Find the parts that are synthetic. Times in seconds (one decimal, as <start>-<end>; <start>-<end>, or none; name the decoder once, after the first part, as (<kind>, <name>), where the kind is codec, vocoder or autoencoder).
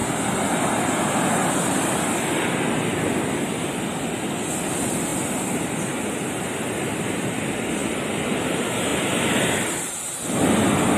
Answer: none